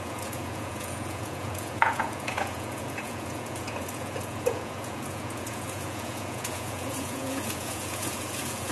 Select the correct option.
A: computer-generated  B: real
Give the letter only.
A